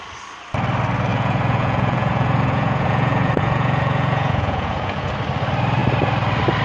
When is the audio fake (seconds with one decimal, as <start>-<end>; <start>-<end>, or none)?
1.1-5.1